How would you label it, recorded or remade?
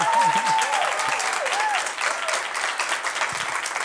recorded